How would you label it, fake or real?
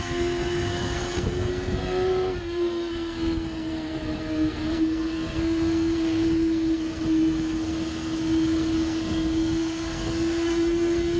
fake